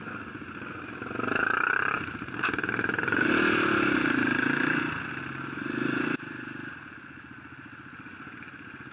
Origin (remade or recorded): recorded